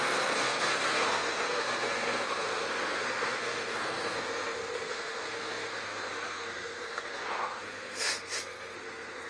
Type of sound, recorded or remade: remade